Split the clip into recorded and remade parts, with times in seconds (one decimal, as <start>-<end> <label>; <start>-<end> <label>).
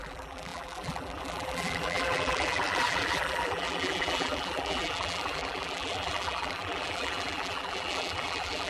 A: 0.0-8.7 remade